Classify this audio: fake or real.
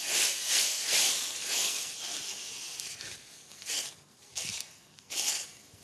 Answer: fake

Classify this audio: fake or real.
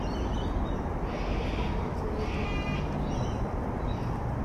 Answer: real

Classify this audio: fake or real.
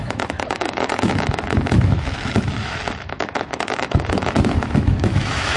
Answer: fake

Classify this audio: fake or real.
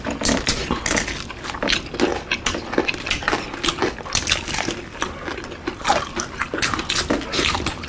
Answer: fake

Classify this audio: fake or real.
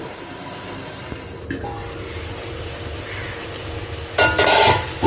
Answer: real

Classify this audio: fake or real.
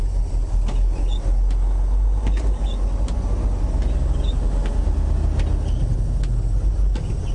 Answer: real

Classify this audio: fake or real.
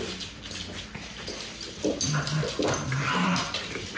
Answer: real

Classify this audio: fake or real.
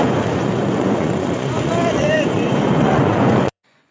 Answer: fake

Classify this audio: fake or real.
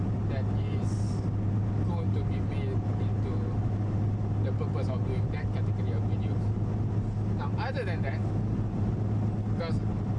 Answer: real